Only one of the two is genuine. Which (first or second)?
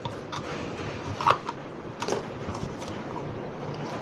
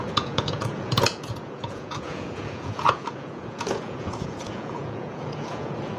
first